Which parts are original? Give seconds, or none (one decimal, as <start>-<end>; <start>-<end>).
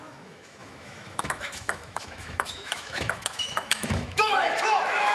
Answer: none